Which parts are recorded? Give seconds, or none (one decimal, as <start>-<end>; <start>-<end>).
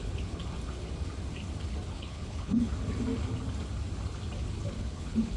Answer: 0.4-1.9; 2.7-4.7